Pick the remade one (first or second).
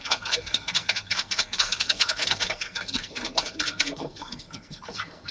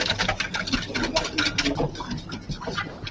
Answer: first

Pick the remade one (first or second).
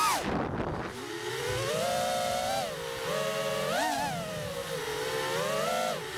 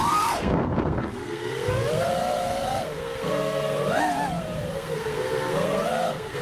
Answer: second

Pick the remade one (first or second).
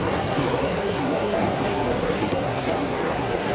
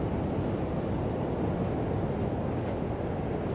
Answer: first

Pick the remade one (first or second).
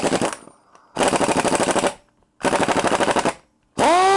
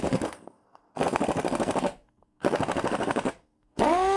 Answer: second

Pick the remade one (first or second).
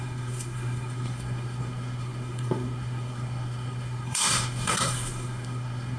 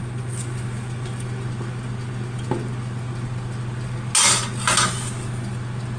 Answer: first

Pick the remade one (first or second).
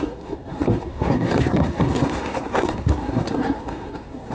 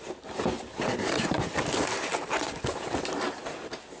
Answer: first